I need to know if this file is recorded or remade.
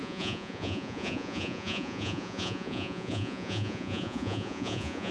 remade